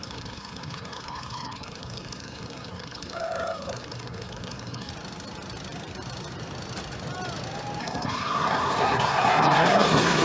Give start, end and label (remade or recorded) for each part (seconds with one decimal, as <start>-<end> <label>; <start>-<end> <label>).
0.0-4.9 remade; 4.9-7.8 recorded; 7.8-10.2 remade